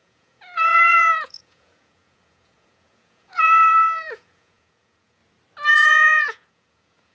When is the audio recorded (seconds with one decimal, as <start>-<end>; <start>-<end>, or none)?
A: 5.2-5.7